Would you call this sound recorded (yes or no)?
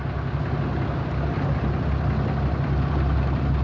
yes